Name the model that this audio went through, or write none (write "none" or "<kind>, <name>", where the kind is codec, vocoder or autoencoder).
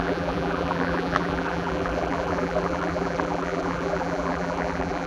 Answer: vocoder, BigVGAN v2